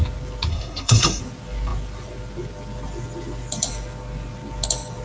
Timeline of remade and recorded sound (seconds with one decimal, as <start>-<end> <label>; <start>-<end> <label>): 0.0-0.5 recorded; 0.5-1.2 remade; 1.2-5.0 recorded